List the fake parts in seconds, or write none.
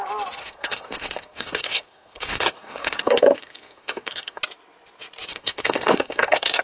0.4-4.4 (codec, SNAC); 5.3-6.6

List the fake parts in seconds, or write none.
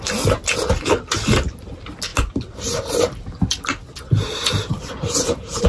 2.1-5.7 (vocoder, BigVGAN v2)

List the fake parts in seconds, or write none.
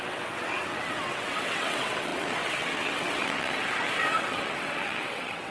0.0-5.5 (vocoder, WaveNeXt)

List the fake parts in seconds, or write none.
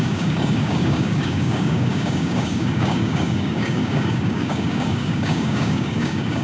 0.0-6.4 (codec, DAC)